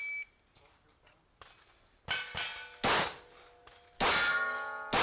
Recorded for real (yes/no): yes